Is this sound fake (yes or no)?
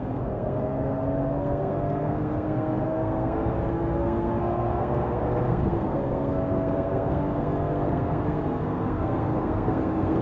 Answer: yes